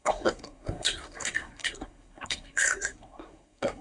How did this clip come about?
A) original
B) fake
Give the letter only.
B